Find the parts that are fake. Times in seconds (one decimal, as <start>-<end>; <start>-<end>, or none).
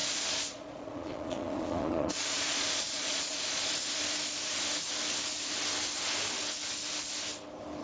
0.0-3.7